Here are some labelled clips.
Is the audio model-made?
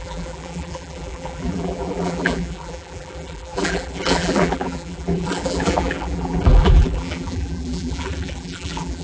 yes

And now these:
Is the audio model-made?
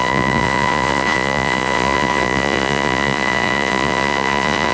yes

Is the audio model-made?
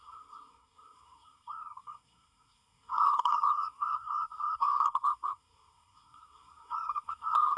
yes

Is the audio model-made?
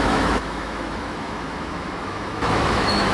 yes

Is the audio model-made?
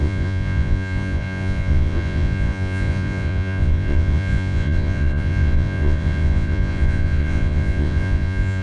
yes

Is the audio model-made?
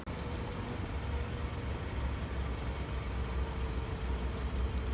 no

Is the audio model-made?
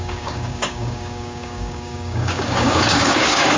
yes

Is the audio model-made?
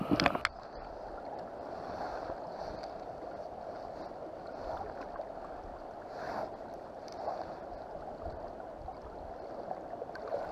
no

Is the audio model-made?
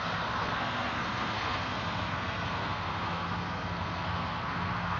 yes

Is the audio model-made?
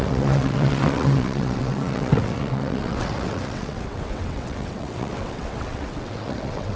yes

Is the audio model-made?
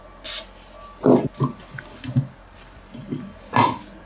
no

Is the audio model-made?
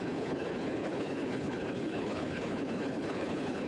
yes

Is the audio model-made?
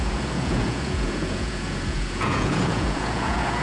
yes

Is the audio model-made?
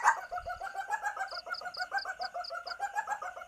no